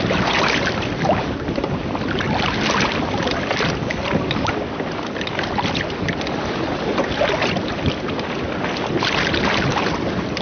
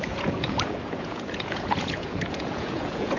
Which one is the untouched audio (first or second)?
first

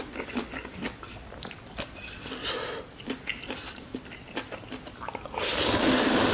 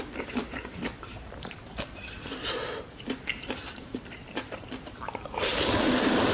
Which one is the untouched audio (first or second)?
first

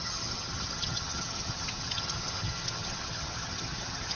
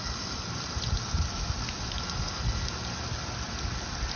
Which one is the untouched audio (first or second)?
second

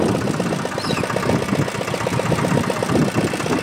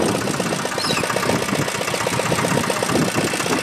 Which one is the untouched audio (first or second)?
second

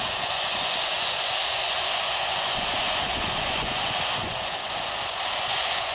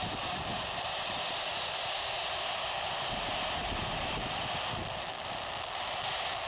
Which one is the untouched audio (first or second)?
second